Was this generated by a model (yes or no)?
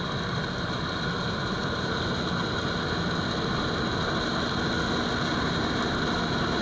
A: no